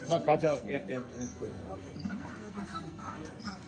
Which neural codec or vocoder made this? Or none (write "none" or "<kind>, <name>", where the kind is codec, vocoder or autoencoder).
codec, SNAC